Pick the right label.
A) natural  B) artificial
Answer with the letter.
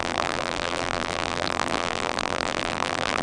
B